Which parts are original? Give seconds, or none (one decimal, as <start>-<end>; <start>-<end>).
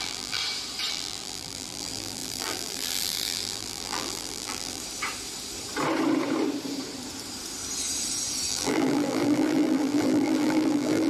0.4-0.9; 4.8-8.5